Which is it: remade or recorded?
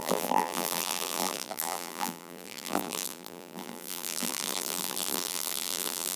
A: remade